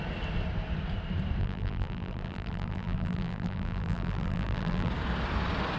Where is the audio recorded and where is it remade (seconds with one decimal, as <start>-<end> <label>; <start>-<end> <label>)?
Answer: 0.0-1.4 recorded; 1.4-4.9 remade; 4.9-5.8 recorded